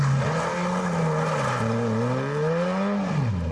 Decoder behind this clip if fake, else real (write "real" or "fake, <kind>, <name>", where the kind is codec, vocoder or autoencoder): real